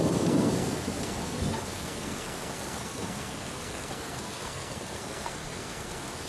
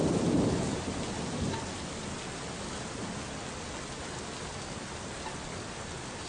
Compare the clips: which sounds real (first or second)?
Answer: second